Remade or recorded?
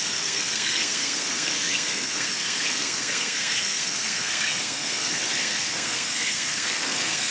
remade